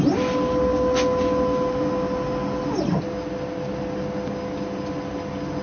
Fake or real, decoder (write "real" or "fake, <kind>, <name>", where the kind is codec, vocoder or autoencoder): real